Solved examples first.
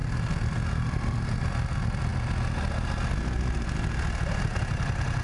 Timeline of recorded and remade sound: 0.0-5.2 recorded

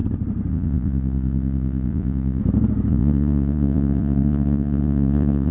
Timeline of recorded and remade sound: 0.0-0.5 recorded; 0.5-2.4 remade; 2.4-2.9 recorded; 2.9-5.5 remade

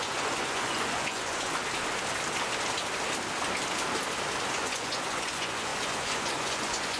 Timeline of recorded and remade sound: 0.0-1.6 remade; 1.6-4.5 recorded; 4.5-7.0 remade

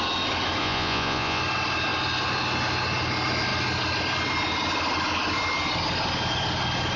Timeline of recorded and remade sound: 0.0-0.6 recorded; 0.6-1.4 remade; 1.4-7.0 recorded

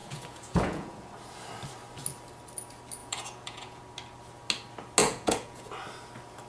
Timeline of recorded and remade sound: 0.0-1.1 remade; 1.1-3.0 recorded; 3.0-3.8 remade; 3.8-5.0 recorded; 5.0-5.7 remade; 5.7-6.5 recorded

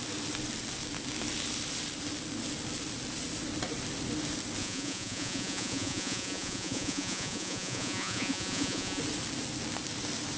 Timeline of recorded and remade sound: 0.0-4.6 recorded; 4.6-9.0 remade; 9.0-10.4 recorded

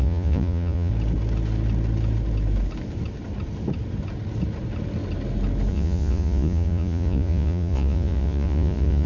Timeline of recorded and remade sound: 0.0-0.9 remade; 0.9-5.7 recorded; 5.7-9.1 remade